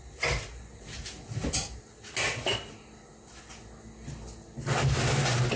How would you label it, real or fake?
real